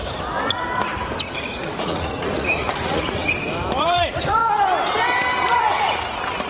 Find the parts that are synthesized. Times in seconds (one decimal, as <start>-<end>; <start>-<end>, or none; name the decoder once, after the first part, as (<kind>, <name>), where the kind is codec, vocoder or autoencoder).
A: 1.4-3.2 (vocoder, Vocos); 3.8-4.4; 5.4-6.5